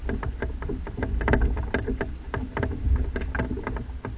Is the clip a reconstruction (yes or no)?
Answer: no